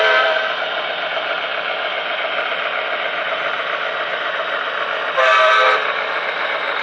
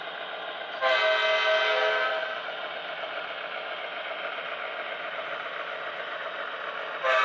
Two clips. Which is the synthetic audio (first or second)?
first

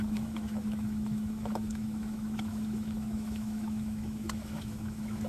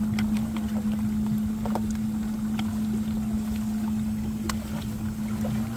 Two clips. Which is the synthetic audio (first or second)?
first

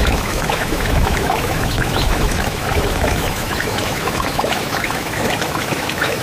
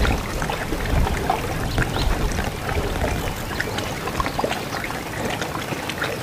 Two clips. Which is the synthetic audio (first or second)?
first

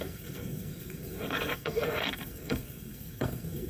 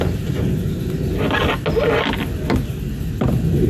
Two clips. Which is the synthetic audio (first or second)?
first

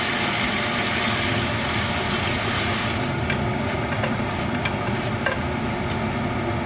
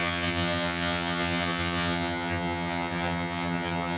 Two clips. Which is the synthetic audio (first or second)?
second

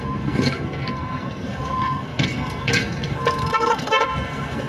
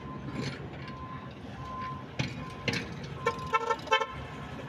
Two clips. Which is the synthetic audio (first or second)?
first